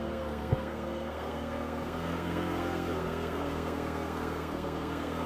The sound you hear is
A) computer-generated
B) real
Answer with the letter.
A